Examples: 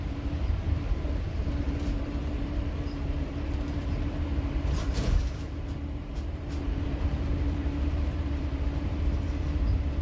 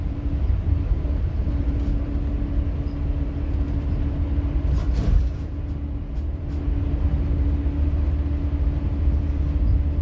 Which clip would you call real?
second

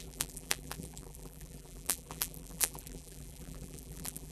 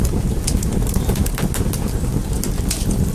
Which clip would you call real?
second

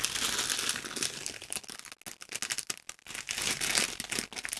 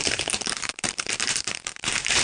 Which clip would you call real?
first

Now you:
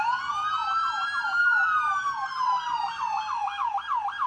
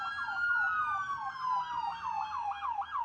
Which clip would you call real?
second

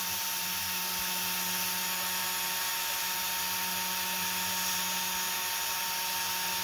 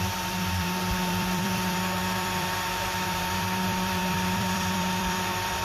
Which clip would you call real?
first